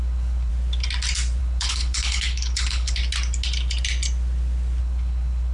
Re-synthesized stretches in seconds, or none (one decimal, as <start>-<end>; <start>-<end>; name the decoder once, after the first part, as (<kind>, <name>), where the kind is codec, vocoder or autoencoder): 0.0-0.5 (codec, HILCodec); 1.4-3.0; 4.8-5.5